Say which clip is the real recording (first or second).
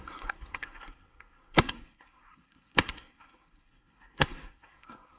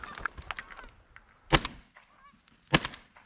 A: second